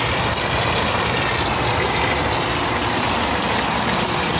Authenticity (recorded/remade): recorded